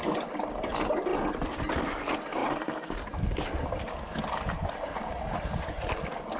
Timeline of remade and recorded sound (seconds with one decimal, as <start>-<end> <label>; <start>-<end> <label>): 0.0-6.4 recorded